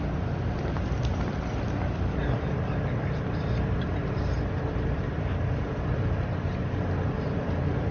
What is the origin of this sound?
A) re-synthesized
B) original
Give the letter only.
A